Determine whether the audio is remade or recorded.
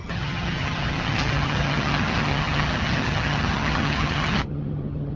remade